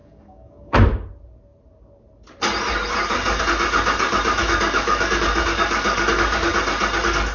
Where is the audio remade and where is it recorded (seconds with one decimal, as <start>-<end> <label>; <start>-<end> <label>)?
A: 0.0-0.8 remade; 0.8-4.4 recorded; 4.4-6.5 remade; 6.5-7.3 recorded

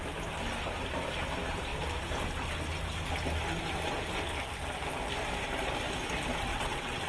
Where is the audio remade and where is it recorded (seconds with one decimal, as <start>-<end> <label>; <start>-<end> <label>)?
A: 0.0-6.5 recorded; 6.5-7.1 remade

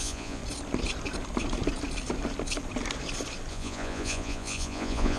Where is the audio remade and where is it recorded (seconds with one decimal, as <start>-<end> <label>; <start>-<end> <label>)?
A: 0.0-0.4 remade; 0.4-3.5 recorded; 3.5-5.2 remade